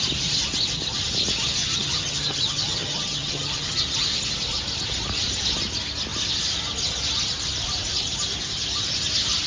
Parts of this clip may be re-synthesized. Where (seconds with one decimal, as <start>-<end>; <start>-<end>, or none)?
1.6-3.8